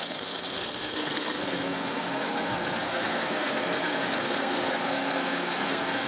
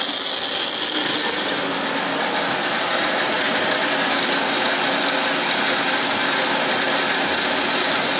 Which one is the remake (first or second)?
first